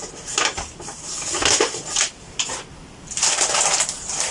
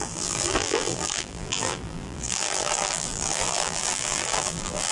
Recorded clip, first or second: first